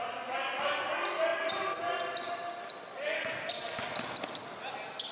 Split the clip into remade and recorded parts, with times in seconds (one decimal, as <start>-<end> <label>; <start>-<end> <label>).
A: 0.0-5.1 recorded